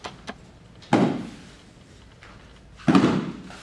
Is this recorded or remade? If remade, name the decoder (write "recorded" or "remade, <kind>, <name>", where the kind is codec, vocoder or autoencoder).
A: recorded